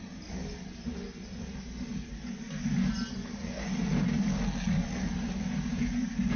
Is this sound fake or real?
real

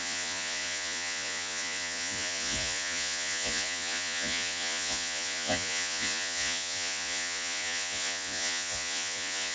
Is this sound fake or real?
fake